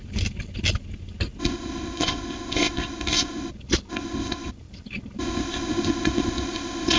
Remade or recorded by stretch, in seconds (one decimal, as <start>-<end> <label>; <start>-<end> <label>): 0.0-1.4 recorded; 1.4-3.5 remade; 3.5-3.9 recorded; 3.9-4.5 remade; 4.5-5.2 recorded; 5.2-7.0 remade